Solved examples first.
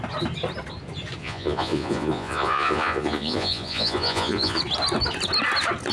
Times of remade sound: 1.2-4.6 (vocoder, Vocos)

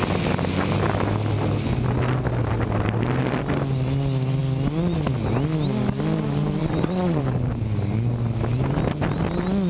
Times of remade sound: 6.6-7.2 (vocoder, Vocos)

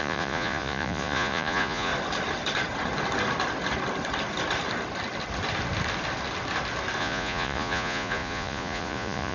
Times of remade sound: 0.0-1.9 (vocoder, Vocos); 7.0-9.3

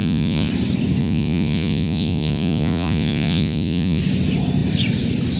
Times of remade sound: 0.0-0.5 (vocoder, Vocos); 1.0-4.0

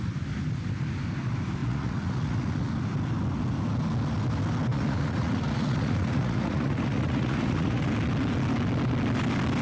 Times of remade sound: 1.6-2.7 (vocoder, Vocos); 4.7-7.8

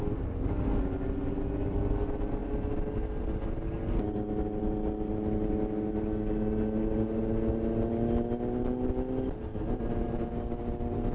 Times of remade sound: none

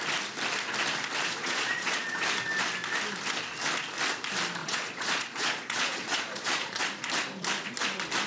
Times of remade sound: 1.4-2.2 (vocoder, Vocos); 4.6-6.8